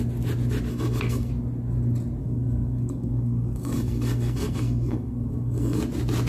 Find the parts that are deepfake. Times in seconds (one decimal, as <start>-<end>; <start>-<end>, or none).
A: 0.7-1.3; 2.2-5.8